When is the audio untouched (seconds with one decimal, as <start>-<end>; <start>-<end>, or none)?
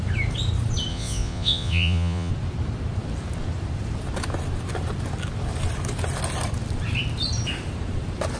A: 0.0-0.9; 2.3-8.4